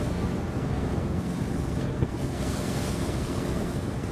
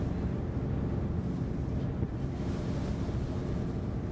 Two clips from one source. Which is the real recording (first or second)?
second